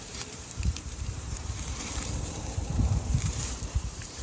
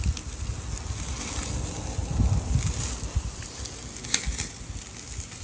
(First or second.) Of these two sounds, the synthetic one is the first